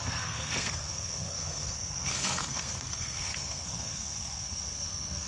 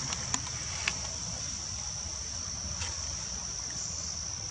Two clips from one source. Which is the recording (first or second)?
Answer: second